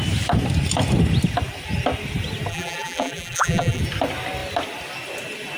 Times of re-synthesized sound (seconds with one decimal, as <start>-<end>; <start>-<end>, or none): 2.5-3.8